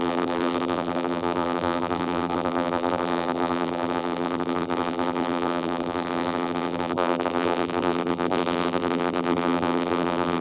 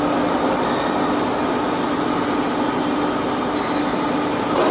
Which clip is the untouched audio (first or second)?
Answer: second